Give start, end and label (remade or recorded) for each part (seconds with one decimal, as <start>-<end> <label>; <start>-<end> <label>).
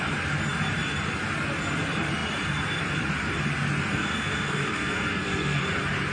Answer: 0.0-3.9 recorded; 3.9-5.6 remade; 5.6-6.1 recorded